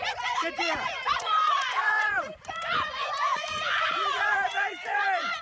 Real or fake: fake